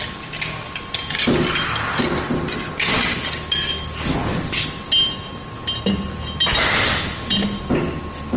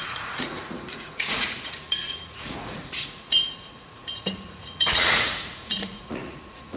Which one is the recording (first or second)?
first